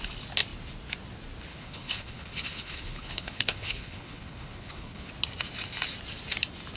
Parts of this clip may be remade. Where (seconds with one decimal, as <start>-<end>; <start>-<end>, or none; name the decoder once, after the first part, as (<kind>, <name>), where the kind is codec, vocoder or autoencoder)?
1.5-5.1 (codec, HILCodec)